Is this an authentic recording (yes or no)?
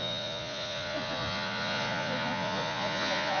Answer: no